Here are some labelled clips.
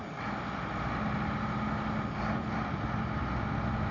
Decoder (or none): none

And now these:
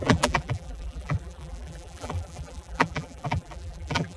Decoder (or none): vocoder, BigVGAN v2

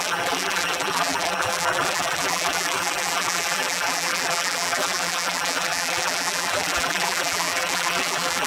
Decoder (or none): vocoder, BigVGAN v2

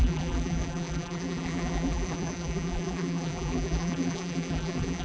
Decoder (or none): vocoder, BigVGAN v2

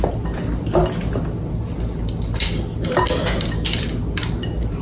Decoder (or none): none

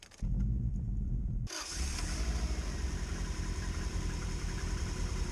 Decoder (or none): vocoder, BigVGAN v2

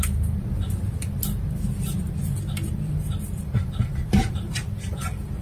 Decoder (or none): vocoder, BigVGAN v2